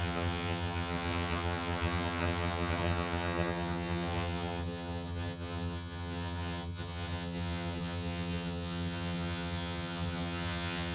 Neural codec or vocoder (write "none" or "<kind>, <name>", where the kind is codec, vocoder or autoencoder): vocoder, HiFi-GAN